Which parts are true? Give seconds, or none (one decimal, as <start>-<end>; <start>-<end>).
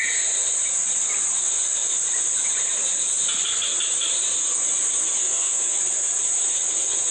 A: 0.0-5.2; 5.7-7.1